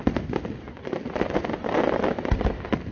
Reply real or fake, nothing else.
real